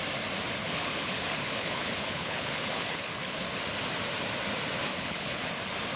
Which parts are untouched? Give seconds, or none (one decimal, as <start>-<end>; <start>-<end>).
0.0-0.6; 3.6-4.9; 5.5-6.0